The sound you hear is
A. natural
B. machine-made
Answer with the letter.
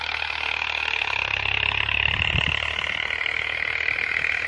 A